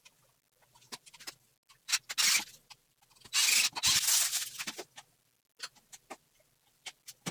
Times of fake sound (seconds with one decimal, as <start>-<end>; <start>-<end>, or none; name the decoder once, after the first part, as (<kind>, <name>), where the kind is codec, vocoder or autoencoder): none